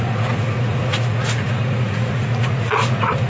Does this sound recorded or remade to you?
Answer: remade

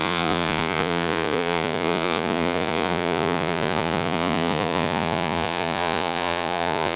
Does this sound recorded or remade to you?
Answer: remade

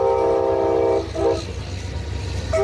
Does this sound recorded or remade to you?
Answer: recorded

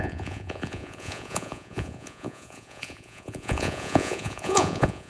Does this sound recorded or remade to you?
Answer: remade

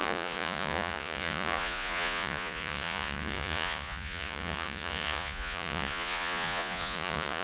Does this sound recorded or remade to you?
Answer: remade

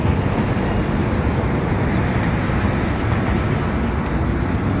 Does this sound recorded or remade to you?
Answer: recorded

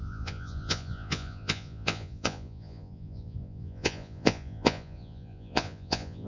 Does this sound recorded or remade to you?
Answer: remade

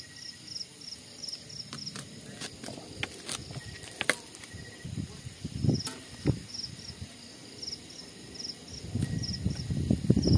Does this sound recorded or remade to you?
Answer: recorded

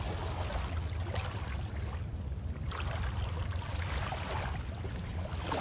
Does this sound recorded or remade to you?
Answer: recorded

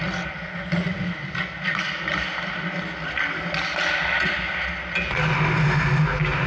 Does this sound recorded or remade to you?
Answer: recorded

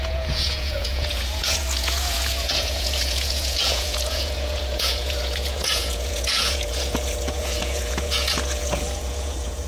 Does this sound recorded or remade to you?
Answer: remade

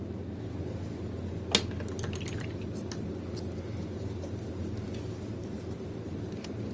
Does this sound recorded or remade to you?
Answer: recorded